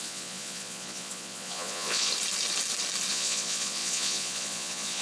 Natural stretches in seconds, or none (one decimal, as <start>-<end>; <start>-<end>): 2.1-3.1